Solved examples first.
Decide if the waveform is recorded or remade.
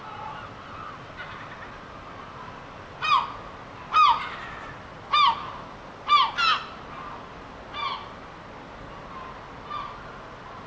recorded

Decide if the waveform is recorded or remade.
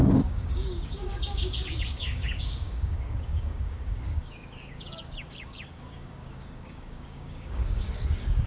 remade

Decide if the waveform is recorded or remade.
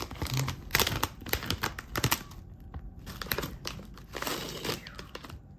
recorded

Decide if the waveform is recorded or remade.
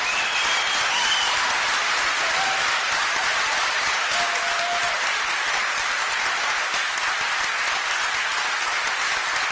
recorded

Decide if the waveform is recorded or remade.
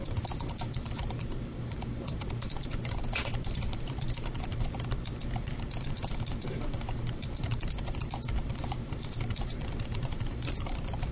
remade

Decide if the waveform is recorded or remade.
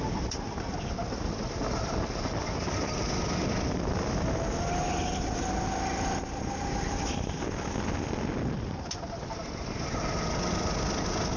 recorded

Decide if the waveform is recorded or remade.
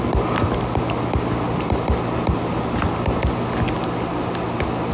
recorded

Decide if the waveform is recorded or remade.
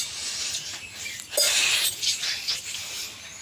recorded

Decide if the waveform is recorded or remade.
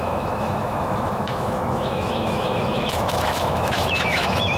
remade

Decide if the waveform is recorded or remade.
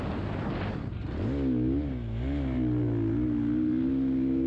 recorded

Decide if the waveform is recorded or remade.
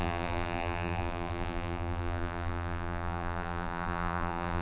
remade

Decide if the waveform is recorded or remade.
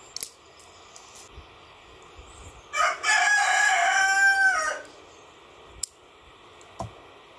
recorded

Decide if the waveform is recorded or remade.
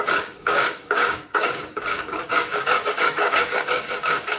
remade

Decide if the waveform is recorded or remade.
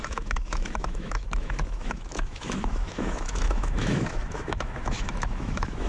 remade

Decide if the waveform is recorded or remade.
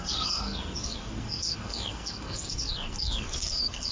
remade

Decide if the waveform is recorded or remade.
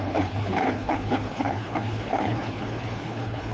remade